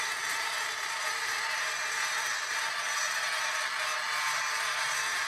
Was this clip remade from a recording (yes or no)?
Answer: no